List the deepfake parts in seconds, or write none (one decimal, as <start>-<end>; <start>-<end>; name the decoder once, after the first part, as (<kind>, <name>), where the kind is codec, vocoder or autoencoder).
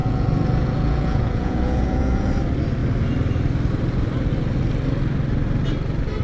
0.0-2.3 (vocoder, Vocos)